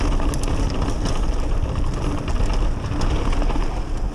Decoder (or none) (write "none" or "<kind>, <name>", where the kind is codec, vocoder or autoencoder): none